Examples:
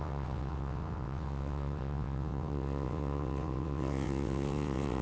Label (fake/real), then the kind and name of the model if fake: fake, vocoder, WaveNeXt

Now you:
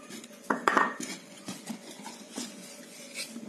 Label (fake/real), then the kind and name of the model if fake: fake, vocoder, Vocos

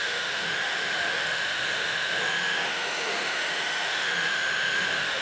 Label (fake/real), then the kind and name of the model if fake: fake, autoencoder, DAC-VAE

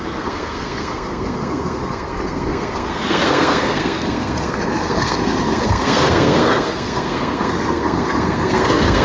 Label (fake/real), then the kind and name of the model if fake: fake, codec, SNAC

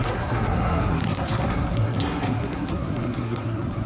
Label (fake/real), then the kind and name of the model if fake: fake, codec, SNAC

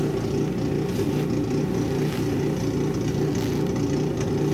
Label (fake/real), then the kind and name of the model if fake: real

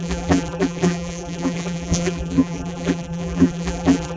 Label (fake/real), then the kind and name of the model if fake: fake, vocoder, BigVGAN v2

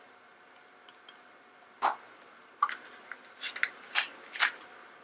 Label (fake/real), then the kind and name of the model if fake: real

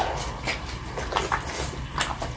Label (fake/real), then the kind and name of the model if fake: real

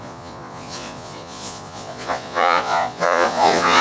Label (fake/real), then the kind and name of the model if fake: fake, vocoder, Vocos